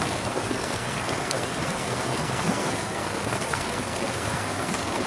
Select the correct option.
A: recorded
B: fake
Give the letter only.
B